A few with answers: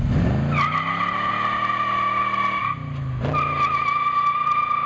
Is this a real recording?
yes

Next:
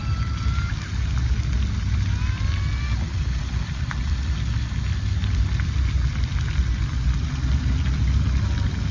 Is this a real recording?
yes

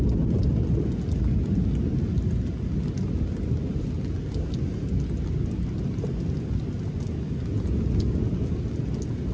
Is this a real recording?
yes